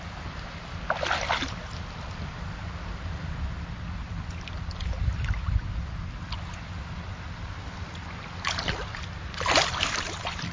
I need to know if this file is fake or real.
real